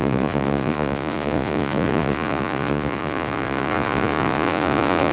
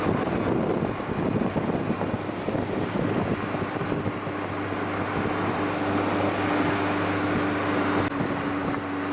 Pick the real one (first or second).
second